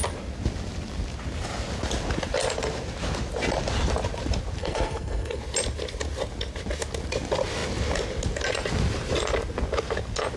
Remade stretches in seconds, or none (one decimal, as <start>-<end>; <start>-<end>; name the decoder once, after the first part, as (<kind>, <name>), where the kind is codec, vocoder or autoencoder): 4.6-5.4 (codec, SNAC)